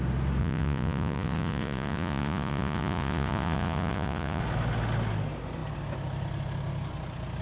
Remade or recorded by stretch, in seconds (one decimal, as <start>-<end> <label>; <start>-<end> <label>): 0.0-0.4 recorded; 0.4-4.4 remade; 4.4-7.4 recorded